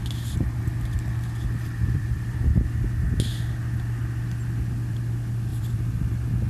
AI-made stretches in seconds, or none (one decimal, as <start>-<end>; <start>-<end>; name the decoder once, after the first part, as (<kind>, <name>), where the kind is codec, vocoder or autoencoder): 1.8-2.5 (vocoder, BigVGAN v2); 5.5-6.1